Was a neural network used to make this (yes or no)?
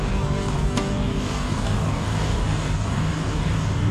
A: yes